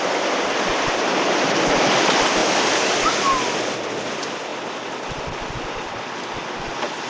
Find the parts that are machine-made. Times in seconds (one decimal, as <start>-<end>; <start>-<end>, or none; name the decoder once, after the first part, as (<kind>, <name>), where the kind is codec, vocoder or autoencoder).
0.0-2.4 (vocoder, BigVGAN v2); 4.1-7.1